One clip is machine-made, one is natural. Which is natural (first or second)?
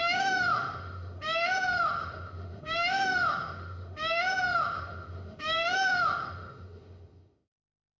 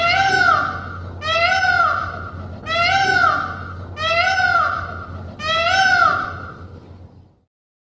second